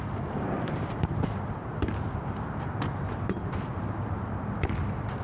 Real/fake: fake